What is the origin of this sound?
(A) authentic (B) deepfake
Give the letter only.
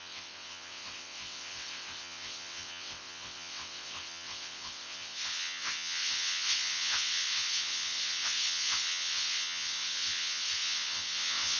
B